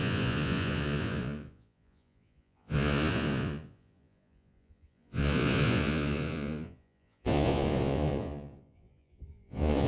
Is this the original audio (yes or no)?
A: no